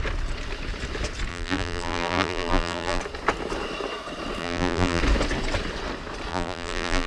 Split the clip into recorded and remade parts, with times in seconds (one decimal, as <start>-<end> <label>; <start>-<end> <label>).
0.0-1.3 recorded; 1.3-3.0 remade; 3.0-4.4 recorded; 4.4-5.0 remade; 5.0-6.3 recorded; 6.3-7.1 remade